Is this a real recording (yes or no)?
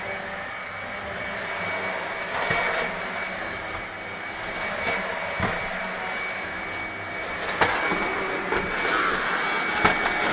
yes